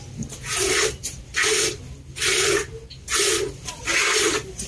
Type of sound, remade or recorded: recorded